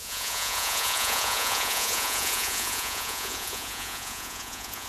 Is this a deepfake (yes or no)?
yes